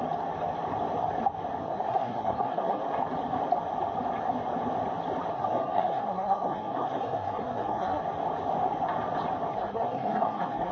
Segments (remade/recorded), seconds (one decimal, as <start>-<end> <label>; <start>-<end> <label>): 0.0-1.6 recorded; 1.6-2.8 remade; 2.8-5.3 recorded; 5.3-8.0 remade; 8.0-9.5 recorded; 9.5-10.7 remade

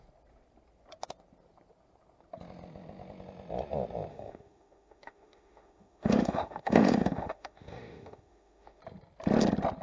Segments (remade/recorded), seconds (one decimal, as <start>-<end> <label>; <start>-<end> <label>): 0.0-4.1 recorded; 4.1-8.8 remade; 8.8-9.8 recorded

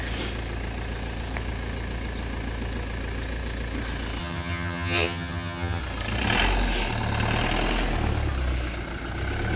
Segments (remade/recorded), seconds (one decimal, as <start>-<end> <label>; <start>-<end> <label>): 0.0-4.2 recorded; 4.2-5.8 remade; 5.8-9.6 recorded

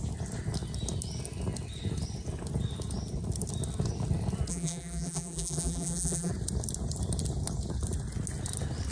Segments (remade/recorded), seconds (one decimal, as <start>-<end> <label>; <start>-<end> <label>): 0.0-4.5 recorded; 4.5-6.3 remade; 6.3-8.9 recorded

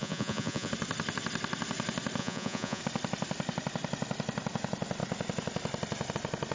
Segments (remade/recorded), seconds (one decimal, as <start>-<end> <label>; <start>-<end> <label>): 0.0-0.7 remade; 0.7-2.2 recorded; 2.2-2.8 remade; 2.8-6.5 recorded